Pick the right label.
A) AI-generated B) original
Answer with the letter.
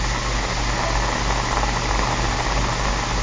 B